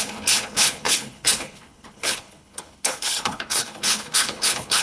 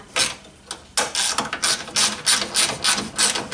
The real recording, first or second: second